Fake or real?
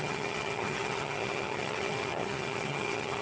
fake